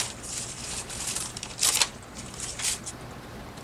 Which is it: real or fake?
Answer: fake